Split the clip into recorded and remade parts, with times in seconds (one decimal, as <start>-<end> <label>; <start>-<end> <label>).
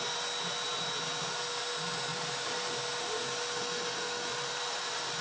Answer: 0.0-2.1 recorded; 2.1-2.7 remade; 2.7-4.3 recorded; 4.3-5.2 remade